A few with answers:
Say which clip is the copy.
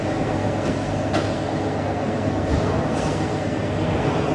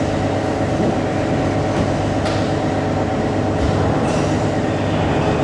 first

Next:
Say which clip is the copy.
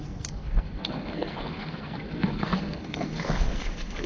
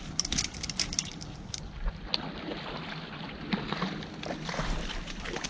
first